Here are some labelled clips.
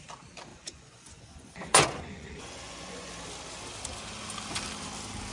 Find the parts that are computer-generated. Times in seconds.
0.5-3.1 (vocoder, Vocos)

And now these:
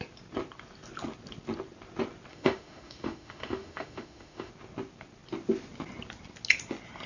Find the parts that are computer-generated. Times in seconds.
2.3-4.5 (autoencoder, DAC-VAE)

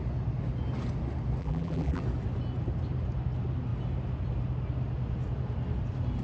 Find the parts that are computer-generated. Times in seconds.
1.4-2.0 (vocoder, BigVGAN v2)

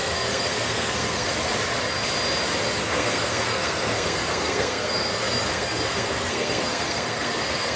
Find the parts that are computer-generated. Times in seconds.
0.0-1.3 (codec, SNAC); 2.8-7.8

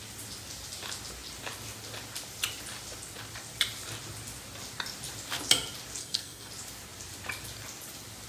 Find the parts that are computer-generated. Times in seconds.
6.0-6.5 (codec, SNAC)

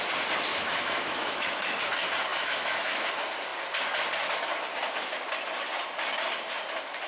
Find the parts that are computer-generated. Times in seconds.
0.5-1.8 (autoencoder, DAC-VAE); 2.3-3.1